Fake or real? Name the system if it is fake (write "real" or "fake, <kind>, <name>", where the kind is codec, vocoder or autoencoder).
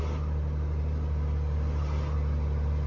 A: real